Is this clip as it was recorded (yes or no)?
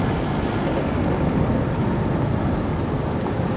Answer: yes